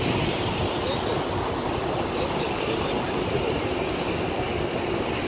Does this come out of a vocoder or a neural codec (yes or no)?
no